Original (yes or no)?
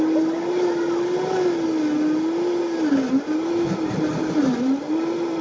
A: yes